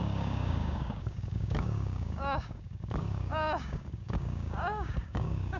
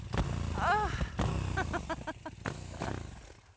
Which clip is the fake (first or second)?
first